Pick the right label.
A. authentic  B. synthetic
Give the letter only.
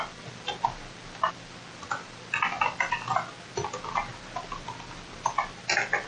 A